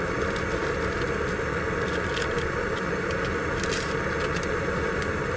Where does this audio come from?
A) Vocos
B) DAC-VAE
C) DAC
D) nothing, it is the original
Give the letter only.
D